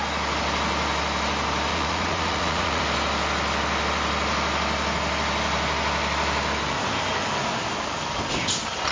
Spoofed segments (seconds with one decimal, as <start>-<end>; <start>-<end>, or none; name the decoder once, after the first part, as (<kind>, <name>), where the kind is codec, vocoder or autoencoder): 1.7-2.8 (vocoder, Vocos)